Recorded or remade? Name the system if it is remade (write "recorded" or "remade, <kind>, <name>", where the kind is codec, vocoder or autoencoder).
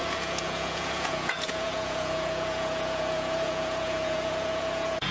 remade, vocoder, Vocos